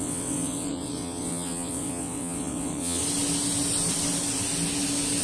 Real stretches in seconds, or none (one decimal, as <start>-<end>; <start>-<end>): 3.0-5.2